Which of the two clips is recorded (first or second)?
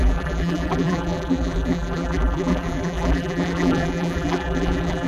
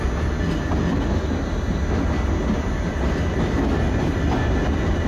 second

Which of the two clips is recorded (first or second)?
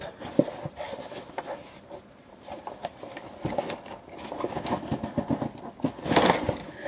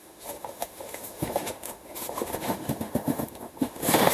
first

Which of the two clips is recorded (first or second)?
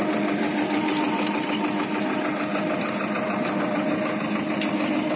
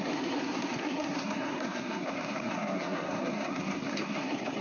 first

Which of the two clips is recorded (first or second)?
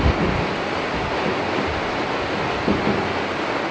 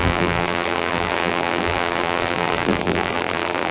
first